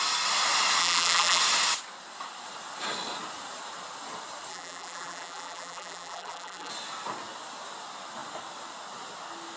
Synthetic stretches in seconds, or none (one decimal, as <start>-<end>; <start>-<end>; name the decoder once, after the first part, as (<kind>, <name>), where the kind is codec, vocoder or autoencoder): 0.8-1.4 (vocoder, BigVGAN v2); 4.5-6.7